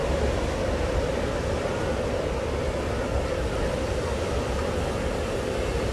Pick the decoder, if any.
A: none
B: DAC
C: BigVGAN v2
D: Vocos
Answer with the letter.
A